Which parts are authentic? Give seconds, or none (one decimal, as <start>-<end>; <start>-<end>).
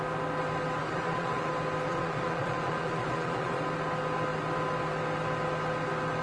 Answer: 0.0-0.8; 1.5-1.9; 3.6-6.2